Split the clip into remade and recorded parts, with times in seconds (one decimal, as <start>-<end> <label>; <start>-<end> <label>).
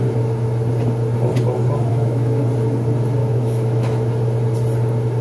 0.0-1.9 recorded; 1.9-2.4 remade; 2.4-3.2 recorded; 3.2-4.1 remade; 4.1-5.2 recorded